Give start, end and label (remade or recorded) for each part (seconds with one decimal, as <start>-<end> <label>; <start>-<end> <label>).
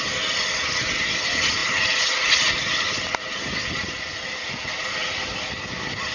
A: 0.0-6.1 recorded